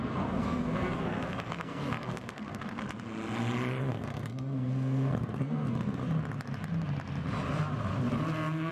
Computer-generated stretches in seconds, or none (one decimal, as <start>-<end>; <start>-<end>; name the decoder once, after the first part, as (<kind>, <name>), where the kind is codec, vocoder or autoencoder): 0.0-2.8 (codec, SNAC); 3.8-6.0

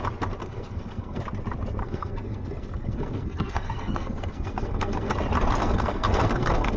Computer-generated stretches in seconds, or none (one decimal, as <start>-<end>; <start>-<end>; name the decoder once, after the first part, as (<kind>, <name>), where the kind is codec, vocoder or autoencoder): 0.4-1.2 (codec, SNAC); 1.8-5.1; 5.6-6.8